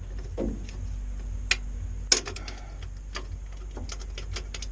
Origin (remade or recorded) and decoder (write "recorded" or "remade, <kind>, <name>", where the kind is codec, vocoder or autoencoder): recorded